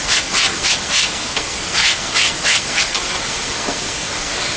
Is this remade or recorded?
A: remade